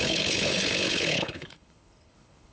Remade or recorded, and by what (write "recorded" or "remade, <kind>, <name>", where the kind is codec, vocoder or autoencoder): remade, codec, HILCodec